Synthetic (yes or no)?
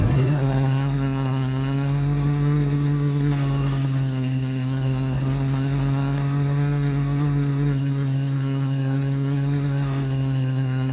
yes